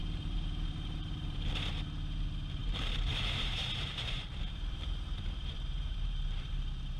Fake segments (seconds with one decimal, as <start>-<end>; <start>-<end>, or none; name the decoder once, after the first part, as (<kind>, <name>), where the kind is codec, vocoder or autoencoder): 0.0-1.5 (vocoder, BigVGAN v2); 2.6-6.5

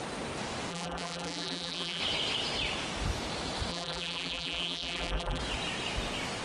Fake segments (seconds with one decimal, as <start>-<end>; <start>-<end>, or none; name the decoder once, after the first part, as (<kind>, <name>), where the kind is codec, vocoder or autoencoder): 0.7-2.0 (vocoder, BigVGAN v2); 3.7-5.4

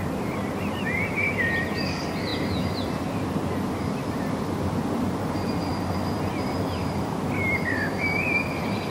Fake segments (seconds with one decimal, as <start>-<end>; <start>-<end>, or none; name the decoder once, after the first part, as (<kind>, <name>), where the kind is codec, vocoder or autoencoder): none

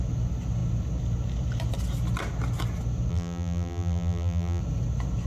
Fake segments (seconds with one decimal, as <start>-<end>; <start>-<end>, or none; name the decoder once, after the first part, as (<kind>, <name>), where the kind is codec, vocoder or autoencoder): 3.1-4.6 (vocoder, BigVGAN v2)

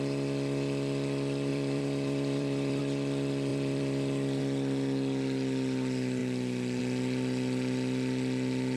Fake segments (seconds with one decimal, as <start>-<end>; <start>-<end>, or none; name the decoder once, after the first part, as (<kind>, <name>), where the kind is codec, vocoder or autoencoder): 1.5-2.8 (vocoder, BigVGAN v2); 3.5-4.4

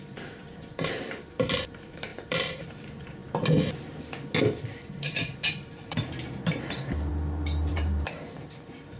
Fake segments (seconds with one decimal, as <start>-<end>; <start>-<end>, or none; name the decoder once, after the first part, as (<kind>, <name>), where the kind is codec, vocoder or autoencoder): 0.0-3.2 (vocoder, BigVGAN v2); 4.7-7.1; 7.7-9.0

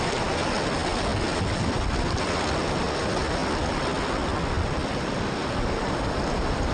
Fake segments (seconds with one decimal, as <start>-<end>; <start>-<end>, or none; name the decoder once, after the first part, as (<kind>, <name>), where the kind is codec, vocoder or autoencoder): none